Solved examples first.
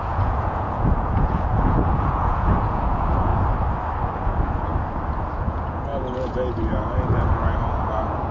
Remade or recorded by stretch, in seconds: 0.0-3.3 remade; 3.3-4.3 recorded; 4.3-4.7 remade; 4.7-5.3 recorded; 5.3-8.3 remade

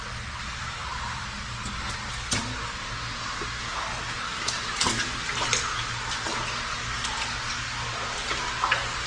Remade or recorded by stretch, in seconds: 0.0-9.1 recorded

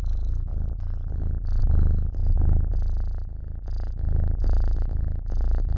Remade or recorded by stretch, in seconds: 0.0-0.5 remade; 0.5-1.6 recorded; 1.6-2.2 remade; 2.2-3.9 recorded; 3.9-5.8 remade

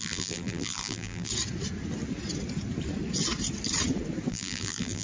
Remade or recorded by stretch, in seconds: 0.0-1.3 remade; 1.3-4.3 recorded; 4.3-5.0 remade

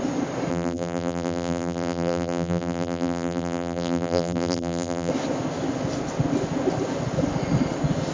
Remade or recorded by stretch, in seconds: 0.0-0.5 recorded; 0.5-5.1 remade; 5.1-8.1 recorded